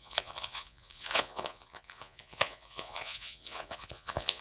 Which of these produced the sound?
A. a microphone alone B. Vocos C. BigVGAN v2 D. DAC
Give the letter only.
B